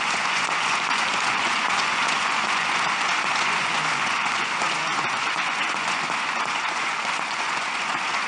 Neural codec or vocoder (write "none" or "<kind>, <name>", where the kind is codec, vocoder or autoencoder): vocoder, Vocos